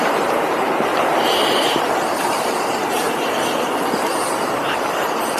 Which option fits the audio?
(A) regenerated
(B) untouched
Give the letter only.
A